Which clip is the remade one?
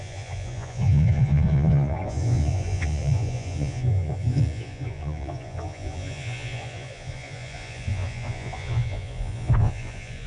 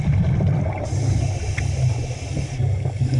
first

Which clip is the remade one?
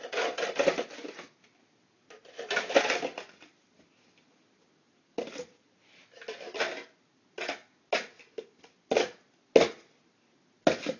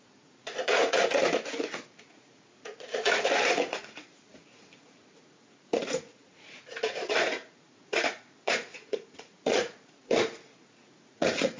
second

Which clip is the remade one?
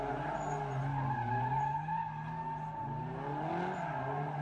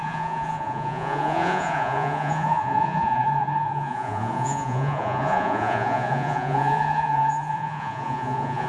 second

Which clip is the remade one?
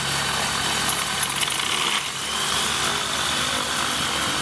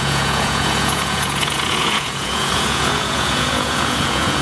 second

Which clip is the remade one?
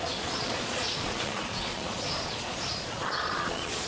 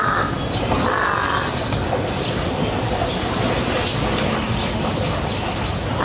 first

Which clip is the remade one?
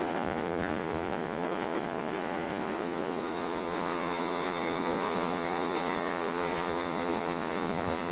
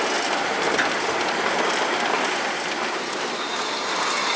first